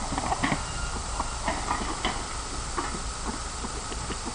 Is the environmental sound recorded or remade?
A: recorded